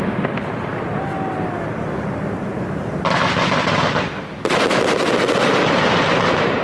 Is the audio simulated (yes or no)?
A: no